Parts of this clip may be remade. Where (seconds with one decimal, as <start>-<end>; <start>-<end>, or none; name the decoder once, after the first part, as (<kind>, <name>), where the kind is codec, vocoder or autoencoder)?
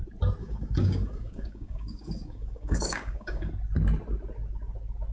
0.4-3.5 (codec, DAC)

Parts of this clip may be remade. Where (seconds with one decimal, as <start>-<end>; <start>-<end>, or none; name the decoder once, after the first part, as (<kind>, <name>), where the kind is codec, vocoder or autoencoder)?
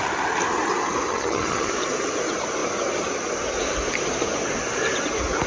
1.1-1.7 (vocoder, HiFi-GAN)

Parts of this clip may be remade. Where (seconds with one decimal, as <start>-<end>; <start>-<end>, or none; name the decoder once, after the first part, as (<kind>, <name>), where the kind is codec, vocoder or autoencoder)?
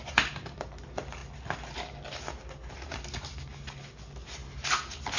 none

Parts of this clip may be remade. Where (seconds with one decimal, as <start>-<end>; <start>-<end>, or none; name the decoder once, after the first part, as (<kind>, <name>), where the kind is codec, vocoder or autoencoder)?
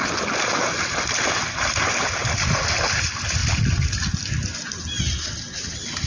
2.2-2.8 (vocoder, BigVGAN v2); 3.4-5.0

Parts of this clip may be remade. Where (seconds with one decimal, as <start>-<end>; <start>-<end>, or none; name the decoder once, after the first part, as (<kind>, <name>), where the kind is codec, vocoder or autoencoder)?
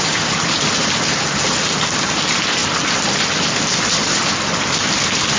none